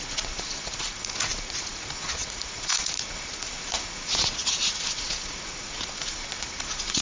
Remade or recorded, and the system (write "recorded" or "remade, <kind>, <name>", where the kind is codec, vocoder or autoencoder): remade, vocoder, Vocos